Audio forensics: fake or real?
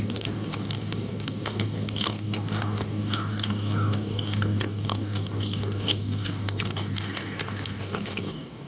fake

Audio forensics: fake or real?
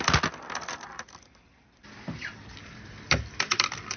real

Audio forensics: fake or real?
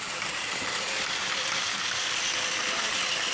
real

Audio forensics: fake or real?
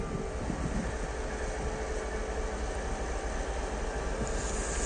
real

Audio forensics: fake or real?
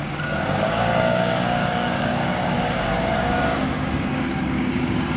fake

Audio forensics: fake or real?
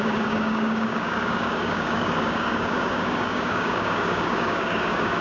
fake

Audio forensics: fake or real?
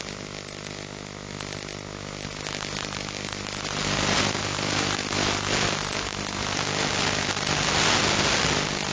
real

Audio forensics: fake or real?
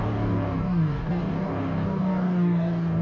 fake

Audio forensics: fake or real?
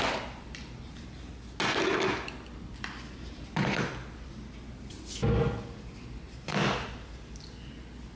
real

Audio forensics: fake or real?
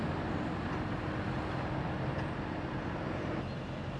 real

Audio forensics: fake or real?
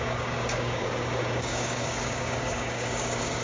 fake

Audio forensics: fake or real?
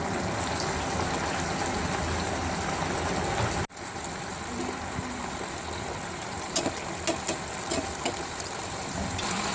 real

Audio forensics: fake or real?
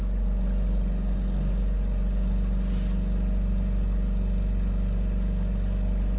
real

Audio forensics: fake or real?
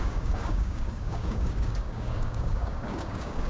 fake